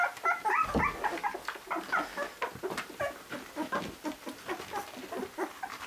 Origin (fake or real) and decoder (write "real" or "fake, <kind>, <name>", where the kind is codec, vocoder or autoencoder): real